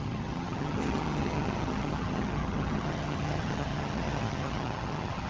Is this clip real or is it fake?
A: fake